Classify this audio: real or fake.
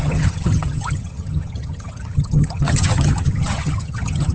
fake